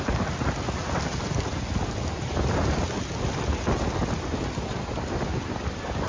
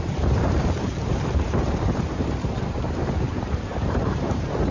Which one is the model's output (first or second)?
second